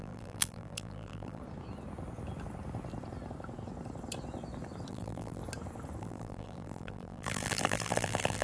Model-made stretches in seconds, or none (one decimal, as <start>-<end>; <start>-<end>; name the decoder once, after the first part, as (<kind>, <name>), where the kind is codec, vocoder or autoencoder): 0.0-1.4 (vocoder, BigVGAN v2); 4.9-5.4; 6.0-8.4